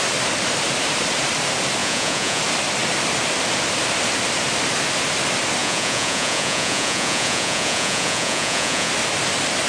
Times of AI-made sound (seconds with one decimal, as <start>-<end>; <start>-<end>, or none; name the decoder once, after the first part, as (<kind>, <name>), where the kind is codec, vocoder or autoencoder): 1.8-2.4 (vocoder, Vocos); 5.6-8.9